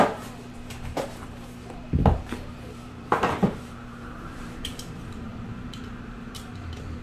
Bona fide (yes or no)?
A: no